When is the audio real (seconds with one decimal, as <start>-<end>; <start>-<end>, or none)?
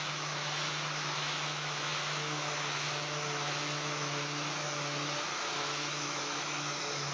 none